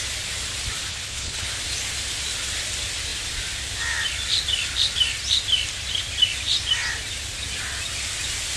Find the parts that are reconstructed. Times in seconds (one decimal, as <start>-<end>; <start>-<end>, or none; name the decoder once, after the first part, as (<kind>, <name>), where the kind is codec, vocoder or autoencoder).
0.9-1.5 (codec, HILCodec)

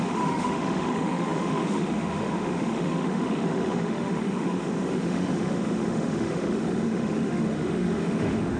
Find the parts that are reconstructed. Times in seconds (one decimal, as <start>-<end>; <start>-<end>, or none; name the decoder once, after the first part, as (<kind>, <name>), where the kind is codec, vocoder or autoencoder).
0.0-8.6 (autoencoder, DAC-VAE)

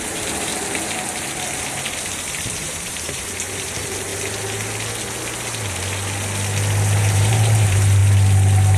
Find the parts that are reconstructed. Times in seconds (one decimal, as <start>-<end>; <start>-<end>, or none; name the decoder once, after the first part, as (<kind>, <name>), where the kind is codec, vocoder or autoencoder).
0.0-0.5 (vocoder, BigVGAN v2); 2.3-4.1; 7.0-8.0

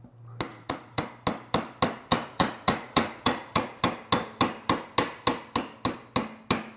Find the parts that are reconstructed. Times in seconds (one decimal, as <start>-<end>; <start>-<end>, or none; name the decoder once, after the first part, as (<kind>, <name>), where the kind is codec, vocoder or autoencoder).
0.5-1.1 (vocoder, Vocos); 2.1-3.8

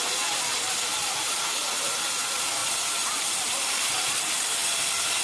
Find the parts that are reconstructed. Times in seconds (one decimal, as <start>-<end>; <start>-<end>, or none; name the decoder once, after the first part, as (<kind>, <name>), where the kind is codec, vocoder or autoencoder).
1.0-1.5 (vocoder, BigVGAN v2); 2.6-4.2

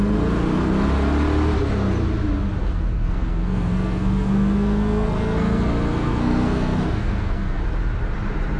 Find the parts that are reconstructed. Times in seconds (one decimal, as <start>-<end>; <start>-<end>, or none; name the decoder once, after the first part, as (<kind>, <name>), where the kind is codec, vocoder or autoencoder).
2.6-7.6 (codec, SNAC)